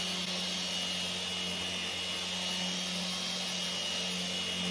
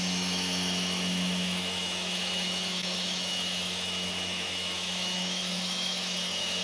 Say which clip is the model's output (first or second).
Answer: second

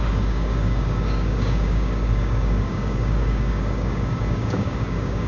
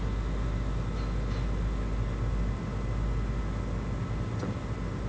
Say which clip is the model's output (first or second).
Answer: first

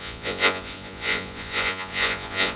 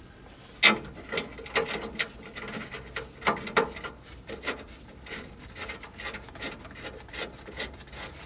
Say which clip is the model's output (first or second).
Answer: first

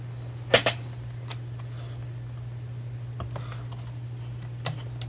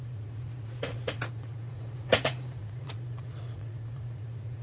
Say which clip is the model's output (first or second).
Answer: second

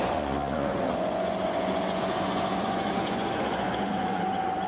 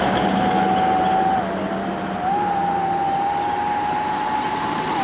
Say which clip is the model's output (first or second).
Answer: first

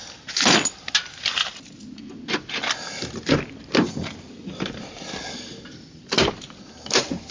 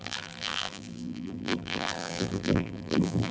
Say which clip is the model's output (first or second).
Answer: second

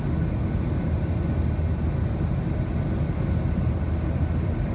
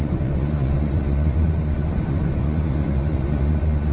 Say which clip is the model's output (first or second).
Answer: second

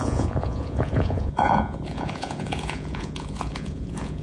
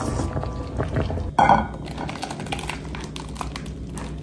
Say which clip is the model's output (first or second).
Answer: first